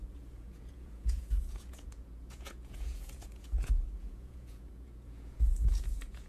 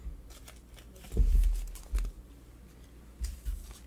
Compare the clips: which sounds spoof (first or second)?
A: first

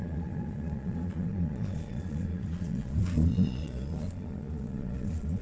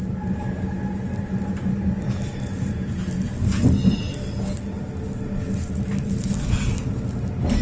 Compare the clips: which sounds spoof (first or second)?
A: first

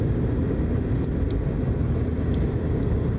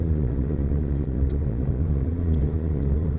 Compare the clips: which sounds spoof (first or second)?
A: second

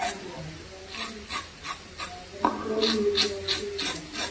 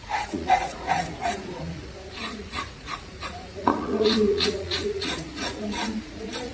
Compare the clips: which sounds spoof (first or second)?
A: second